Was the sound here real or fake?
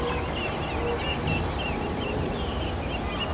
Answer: real